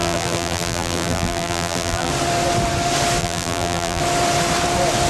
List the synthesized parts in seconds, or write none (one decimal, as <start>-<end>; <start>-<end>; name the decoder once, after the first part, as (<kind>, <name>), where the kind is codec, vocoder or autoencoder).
0.0-2.1 (vocoder, BigVGAN v2); 3.2-4.0